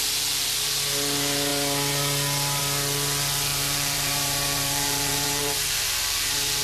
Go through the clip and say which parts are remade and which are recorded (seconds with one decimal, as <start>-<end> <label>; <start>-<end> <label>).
0.0-3.5 recorded; 3.5-6.6 remade